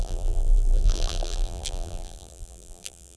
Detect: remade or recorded remade